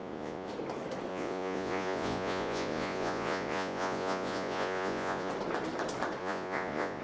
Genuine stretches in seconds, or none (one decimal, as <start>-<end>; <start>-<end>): 0.5-1.1; 5.3-6.2